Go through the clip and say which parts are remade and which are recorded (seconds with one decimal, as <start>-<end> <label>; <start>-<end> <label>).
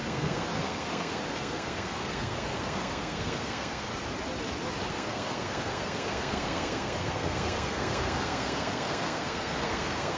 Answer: 0.0-3.9 remade; 3.9-4.9 recorded; 4.9-10.2 remade